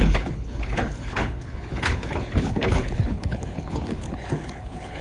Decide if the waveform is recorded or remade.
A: remade